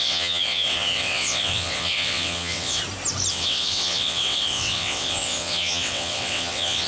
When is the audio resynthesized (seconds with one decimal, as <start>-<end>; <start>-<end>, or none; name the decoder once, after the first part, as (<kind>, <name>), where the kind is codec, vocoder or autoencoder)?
0.0-2.8 (vocoder, WaveNeXt); 3.3-6.9